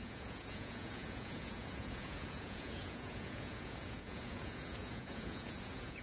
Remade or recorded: remade